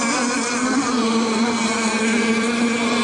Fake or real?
fake